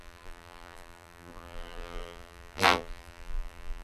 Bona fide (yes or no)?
no